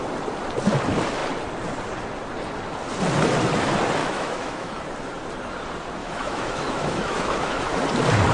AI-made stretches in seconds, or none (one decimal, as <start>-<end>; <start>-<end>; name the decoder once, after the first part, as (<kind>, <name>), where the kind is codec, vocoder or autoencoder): 4.0-4.8 (autoencoder, DAC-VAE); 6.0-7.8